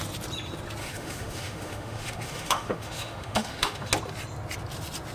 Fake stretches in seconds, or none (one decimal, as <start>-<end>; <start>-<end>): 0.8-3.9